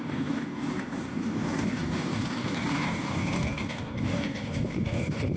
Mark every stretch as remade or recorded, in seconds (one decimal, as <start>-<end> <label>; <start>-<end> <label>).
0.0-5.4 remade